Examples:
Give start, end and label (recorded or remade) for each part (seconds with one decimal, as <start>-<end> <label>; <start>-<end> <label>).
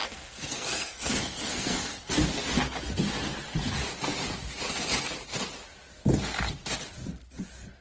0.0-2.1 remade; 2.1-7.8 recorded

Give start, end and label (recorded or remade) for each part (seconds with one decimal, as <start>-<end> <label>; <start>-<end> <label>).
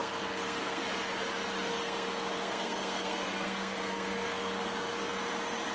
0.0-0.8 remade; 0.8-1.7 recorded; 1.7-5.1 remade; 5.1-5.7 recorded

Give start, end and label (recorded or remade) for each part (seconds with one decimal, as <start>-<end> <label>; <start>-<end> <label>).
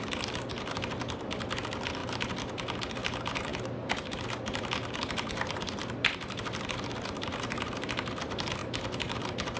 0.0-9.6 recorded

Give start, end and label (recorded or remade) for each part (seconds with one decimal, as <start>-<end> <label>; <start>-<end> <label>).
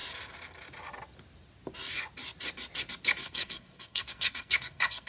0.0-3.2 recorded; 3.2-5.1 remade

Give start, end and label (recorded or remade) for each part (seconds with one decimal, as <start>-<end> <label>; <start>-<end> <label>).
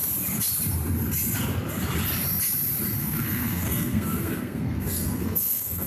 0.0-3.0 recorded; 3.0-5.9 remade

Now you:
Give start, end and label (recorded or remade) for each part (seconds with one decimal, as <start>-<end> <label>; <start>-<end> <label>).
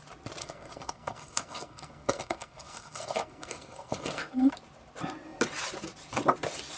0.0-0.4 recorded; 0.4-4.5 remade; 4.5-6.8 recorded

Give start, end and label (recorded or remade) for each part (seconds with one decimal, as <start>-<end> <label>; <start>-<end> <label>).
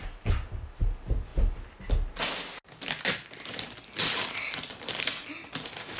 0.0-6.0 recorded